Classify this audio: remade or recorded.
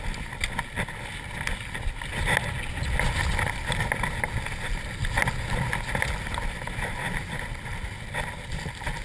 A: recorded